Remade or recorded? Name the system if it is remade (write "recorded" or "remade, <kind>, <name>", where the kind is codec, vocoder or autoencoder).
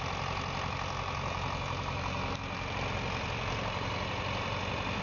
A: recorded